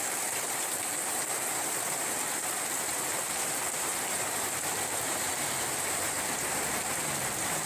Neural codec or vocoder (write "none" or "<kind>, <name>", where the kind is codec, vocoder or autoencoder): vocoder, BigVGAN v2